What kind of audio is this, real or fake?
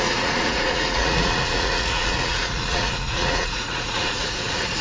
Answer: fake